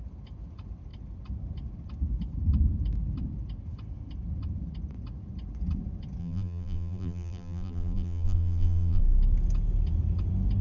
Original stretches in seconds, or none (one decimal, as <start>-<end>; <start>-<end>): 0.0-6.2; 9.0-10.6